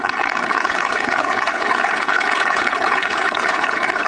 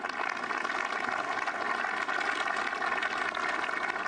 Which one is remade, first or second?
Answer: first